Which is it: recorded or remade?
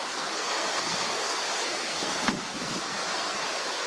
remade